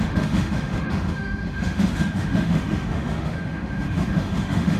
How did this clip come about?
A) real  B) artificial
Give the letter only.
B